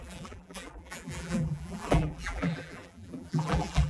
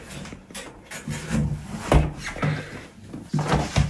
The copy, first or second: first